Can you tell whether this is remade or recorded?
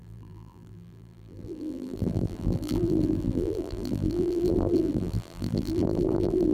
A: remade